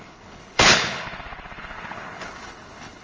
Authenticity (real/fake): fake